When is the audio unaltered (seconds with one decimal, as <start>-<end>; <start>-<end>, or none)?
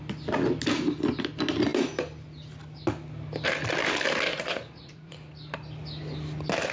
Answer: 0.0-4.3; 5.1-6.7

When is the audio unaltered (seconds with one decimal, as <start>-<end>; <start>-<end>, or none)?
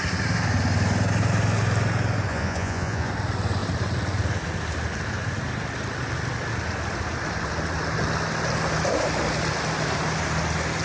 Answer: 0.0-2.3; 3.1-10.8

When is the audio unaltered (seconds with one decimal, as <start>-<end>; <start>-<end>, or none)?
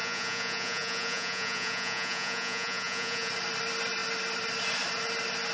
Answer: 3.3-5.5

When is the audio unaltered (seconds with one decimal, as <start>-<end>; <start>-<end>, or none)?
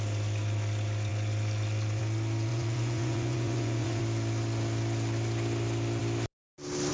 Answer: 0.0-2.5; 4.0-6.9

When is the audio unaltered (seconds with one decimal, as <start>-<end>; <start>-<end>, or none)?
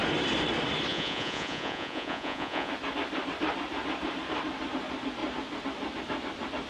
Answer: 0.0-0.9; 2.7-6.7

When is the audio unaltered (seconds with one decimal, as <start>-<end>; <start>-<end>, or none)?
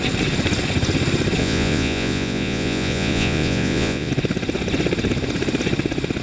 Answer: 0.0-1.4; 4.1-6.2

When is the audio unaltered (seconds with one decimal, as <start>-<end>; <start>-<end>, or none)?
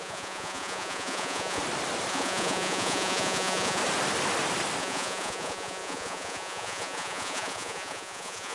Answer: 1.6-2.1; 3.8-4.8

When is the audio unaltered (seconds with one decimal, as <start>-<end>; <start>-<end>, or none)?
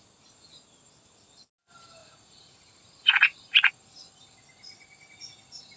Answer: 0.0-2.0; 3.7-5.8